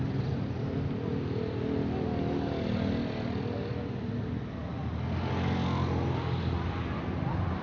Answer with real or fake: real